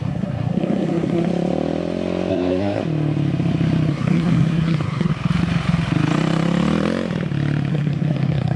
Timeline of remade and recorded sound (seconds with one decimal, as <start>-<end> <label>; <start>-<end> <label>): 0.0-1.3 remade; 1.3-2.3 recorded; 2.3-2.8 remade; 2.8-3.9 recorded; 3.9-5.1 remade; 5.1-7.7 recorded; 7.7-8.6 remade